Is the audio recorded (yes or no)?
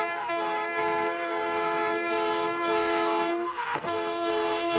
no